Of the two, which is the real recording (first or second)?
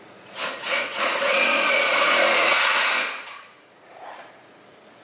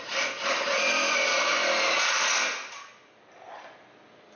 second